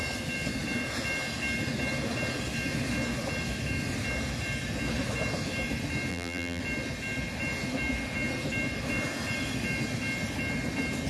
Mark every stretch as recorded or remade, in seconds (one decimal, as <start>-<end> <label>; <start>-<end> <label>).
0.0-6.1 recorded; 6.1-6.6 remade; 6.6-11.1 recorded